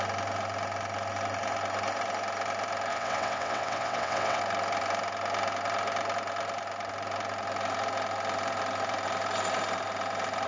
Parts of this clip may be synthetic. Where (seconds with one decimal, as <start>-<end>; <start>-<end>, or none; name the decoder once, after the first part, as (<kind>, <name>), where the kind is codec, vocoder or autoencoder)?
2.9-4.4 (vocoder, WaveNeXt)